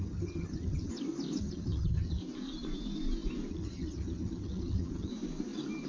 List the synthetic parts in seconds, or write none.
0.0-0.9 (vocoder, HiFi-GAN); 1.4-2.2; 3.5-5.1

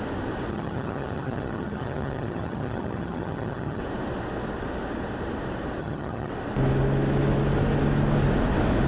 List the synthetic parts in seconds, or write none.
0.5-3.8 (vocoder, HiFi-GAN); 5.8-6.3

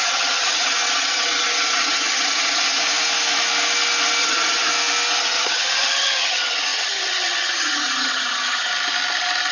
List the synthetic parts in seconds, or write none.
0.0-2.8 (vocoder, HiFi-GAN); 4.2-4.7; 5.2-8.7

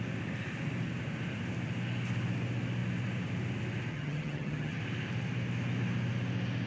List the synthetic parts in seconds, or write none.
3.9-4.8 (vocoder, HiFi-GAN)

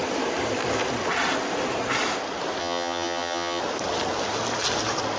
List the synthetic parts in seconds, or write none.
2.6-3.6 (vocoder, HiFi-GAN)

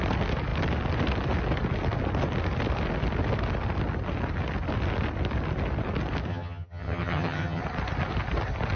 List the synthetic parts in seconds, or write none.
6.3-7.6 (vocoder, HiFi-GAN)

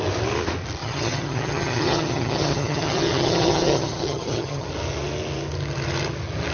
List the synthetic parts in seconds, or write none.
0.8-4.7 (vocoder, HiFi-GAN)

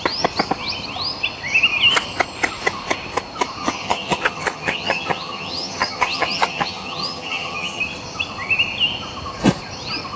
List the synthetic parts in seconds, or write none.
3.6-7.8 (vocoder, HiFi-GAN)